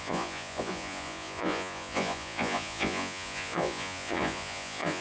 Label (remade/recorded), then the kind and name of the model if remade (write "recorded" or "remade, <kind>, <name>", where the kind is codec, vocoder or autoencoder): remade, vocoder, Vocos